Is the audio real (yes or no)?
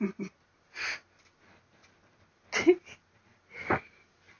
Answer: yes